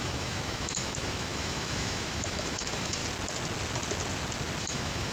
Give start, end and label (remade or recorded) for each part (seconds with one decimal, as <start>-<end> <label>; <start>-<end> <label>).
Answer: 0.0-3.0 remade; 3.0-4.6 recorded; 4.6-5.1 remade